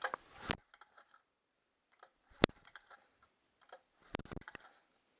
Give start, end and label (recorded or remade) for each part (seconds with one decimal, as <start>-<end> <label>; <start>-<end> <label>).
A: 0.0-0.6 recorded; 0.6-3.4 remade; 3.4-5.2 recorded